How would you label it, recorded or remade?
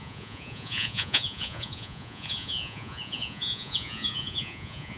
remade